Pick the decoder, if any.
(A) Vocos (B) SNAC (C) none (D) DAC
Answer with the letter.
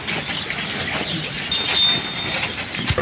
C